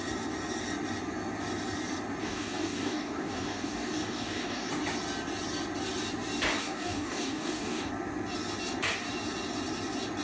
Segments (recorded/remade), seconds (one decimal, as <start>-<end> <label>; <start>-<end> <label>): 0.0-2.2 recorded; 2.2-4.7 remade; 4.7-6.6 recorded; 6.6-7.9 remade; 7.9-10.2 recorded